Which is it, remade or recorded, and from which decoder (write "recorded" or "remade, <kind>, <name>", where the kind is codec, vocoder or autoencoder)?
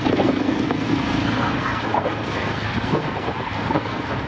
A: remade, codec, SNAC